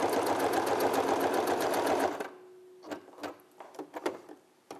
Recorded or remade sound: recorded